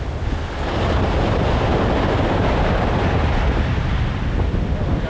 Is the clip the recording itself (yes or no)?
yes